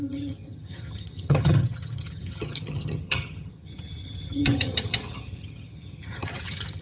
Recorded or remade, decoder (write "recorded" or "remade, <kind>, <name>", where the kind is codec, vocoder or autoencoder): remade, vocoder, HiFi-GAN